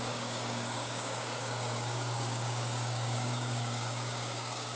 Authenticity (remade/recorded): remade